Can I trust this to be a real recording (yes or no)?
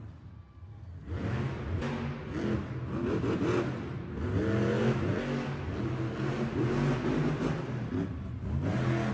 yes